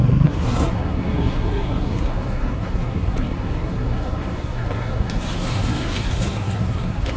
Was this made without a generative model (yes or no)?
no